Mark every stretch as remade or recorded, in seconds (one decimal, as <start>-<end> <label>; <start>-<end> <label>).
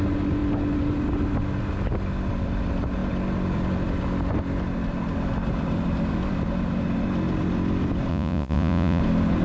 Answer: 0.0-8.1 recorded; 8.1-9.0 remade; 9.0-9.4 recorded